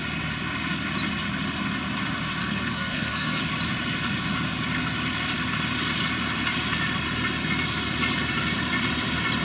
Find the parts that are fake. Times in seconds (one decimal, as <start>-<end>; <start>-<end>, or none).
2.4-3.4